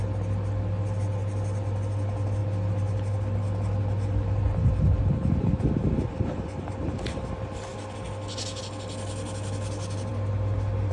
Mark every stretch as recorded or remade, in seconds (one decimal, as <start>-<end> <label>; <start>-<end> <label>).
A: 0.0-10.9 recorded

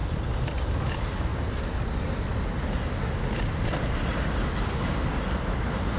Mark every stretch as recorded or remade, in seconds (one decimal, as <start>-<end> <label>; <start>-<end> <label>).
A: 0.0-0.6 remade; 0.6-1.3 recorded; 1.3-1.8 remade; 1.8-6.0 recorded

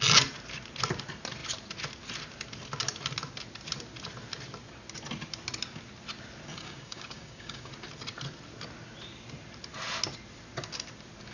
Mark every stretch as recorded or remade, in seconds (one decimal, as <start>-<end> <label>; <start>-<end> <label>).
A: 0.0-6.5 recorded; 6.5-7.7 remade; 7.7-11.3 recorded

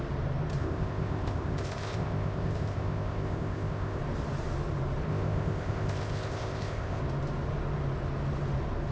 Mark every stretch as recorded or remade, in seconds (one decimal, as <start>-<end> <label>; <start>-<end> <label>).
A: 0.0-0.6 recorded; 0.6-4.0 remade; 4.0-5.1 recorded; 5.1-7.0 remade; 7.0-8.9 recorded